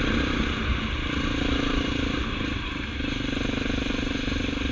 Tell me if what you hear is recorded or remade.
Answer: recorded